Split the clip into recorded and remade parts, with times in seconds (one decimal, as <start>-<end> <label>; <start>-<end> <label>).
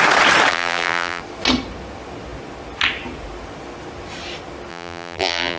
0.0-0.5 recorded; 0.5-1.2 remade; 1.2-4.7 recorded; 4.7-5.6 remade